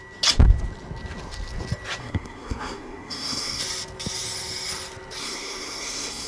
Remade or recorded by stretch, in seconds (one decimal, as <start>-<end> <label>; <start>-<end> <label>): 0.0-2.0 recorded; 2.0-3.6 remade; 3.6-5.2 recorded; 5.2-6.3 remade